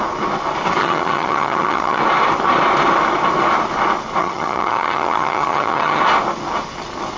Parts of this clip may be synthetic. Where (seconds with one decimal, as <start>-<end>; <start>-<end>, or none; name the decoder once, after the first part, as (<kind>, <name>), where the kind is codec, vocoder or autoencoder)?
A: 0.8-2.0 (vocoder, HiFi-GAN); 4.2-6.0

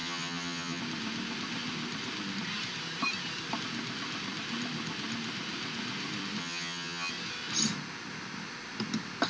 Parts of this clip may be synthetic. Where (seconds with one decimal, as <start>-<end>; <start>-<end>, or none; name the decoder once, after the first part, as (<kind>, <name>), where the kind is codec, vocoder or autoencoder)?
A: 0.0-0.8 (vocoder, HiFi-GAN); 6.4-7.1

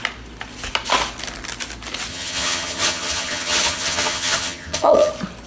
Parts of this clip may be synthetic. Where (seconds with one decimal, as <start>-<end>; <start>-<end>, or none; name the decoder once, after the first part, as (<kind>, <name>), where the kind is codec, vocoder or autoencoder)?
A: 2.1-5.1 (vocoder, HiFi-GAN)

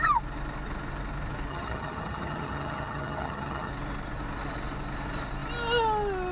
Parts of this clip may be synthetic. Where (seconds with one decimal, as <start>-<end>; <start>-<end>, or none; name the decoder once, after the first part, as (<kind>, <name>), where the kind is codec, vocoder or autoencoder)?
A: 1.5-3.7 (vocoder, HiFi-GAN)

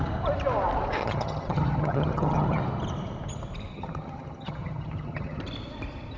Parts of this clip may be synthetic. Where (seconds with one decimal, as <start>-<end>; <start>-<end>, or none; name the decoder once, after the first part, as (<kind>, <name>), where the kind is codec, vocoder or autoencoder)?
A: 1.0-2.6 (vocoder, HiFi-GAN); 3.7-5.4

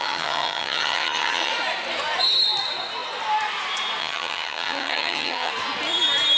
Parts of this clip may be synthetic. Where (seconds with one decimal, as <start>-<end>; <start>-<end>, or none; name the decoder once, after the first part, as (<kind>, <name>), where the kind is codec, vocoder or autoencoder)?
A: 0.0-1.5 (vocoder, HiFi-GAN); 4.0-5.5